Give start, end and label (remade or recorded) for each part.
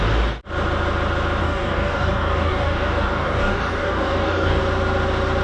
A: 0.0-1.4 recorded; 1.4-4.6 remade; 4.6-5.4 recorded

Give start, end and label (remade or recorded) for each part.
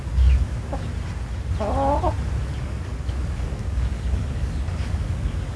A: 0.0-0.9 remade; 0.9-2.4 recorded; 2.4-5.6 remade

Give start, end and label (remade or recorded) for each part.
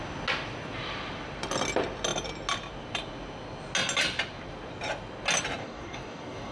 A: 0.0-5.6 recorded; 5.6-6.5 remade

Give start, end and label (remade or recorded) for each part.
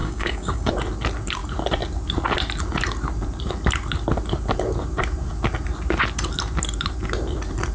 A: 0.0-0.7 remade; 0.7-7.7 recorded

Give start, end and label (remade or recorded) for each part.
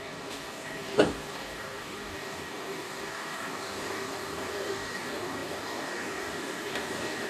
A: 0.0-7.3 remade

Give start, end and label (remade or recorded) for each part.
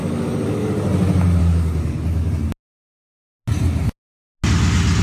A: 0.0-0.7 remade; 0.7-1.4 recorded; 1.4-2.3 remade; 2.3-5.0 recorded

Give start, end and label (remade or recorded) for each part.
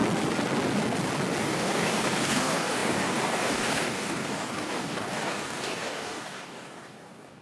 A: 0.0-1.4 recorded; 1.4-7.4 remade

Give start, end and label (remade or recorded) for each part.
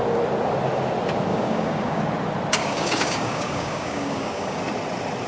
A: 0.0-1.3 recorded; 1.3-2.0 remade; 2.0-2.6 recorded; 2.6-4.6 remade; 4.6-5.3 recorded